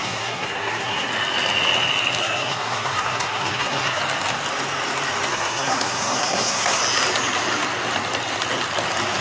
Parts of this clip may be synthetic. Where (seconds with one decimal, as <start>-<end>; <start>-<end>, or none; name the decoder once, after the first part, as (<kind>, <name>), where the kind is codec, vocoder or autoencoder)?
0.0-1.1 (codec, SNAC); 2.2-4.0; 5.3-6.8